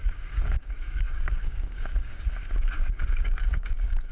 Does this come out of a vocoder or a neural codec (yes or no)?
yes